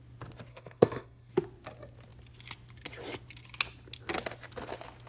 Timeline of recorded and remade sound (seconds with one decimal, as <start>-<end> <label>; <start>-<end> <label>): 0.0-0.5 recorded; 0.5-1.3 remade; 1.3-5.1 recorded